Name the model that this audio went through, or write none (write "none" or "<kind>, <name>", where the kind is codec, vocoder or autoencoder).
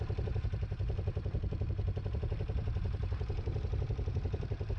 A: vocoder, BigVGAN v2